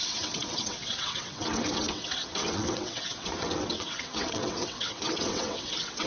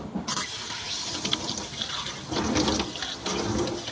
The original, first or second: second